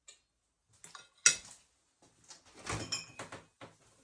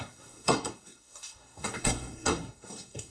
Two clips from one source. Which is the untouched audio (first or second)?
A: first